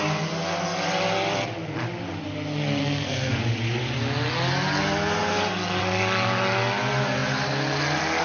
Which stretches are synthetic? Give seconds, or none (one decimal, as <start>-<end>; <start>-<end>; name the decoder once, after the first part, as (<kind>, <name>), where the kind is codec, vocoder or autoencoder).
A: 2.8-3.4 (codec, SNAC)